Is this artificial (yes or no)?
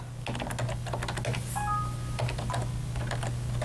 no